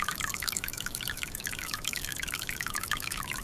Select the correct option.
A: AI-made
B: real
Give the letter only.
A